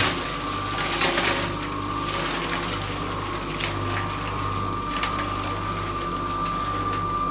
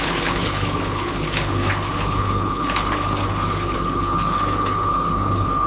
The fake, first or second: second